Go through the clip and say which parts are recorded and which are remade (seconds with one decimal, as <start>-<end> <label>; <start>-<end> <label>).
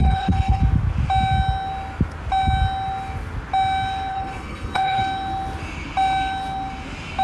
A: 0.0-0.6 remade; 0.6-4.1 recorded; 4.1-5.0 remade; 5.0-7.2 recorded